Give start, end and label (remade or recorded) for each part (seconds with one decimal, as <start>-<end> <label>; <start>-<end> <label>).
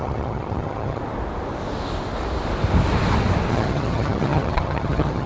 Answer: 0.0-1.0 remade; 1.0-3.5 recorded; 3.5-5.3 remade